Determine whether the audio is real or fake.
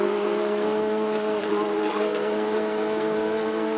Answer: fake